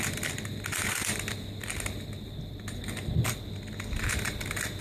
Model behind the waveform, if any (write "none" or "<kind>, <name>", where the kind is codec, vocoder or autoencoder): none